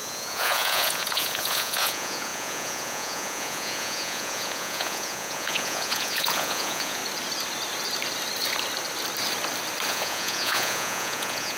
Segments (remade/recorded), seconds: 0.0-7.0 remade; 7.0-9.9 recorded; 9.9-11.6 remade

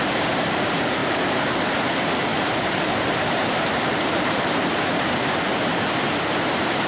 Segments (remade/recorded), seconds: 0.0-2.3 recorded; 2.3-5.2 remade; 5.2-6.9 recorded

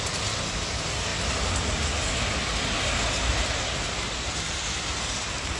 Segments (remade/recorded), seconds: 0.0-5.6 recorded

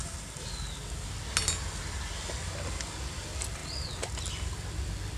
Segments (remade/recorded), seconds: 0.0-3.1 recorded; 3.1-5.2 remade

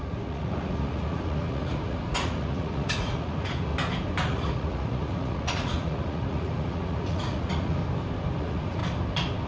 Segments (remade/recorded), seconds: 0.0-3.7 remade; 3.7-4.3 recorded; 4.3-7.8 remade; 7.8-8.4 recorded; 8.4-8.8 remade; 8.8-9.5 recorded